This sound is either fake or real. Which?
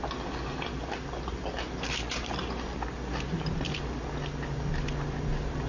real